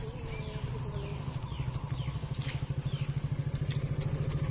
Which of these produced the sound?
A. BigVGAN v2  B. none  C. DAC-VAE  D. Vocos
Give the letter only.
B